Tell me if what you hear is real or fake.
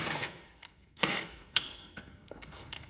fake